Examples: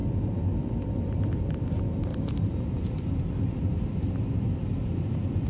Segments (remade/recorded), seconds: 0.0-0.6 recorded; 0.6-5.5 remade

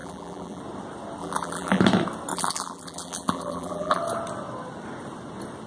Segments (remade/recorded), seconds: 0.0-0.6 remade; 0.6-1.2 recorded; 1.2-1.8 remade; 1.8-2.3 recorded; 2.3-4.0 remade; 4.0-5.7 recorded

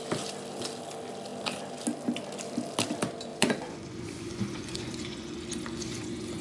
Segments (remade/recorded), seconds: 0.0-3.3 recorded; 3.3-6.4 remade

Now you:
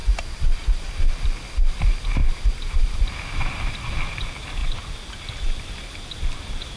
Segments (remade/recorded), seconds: 0.0-2.2 remade; 2.2-2.7 recorded; 2.7-6.8 remade